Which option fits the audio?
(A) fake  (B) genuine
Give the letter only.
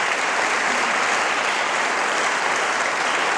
B